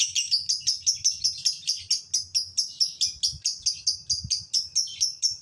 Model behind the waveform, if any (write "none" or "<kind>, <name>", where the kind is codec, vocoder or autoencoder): none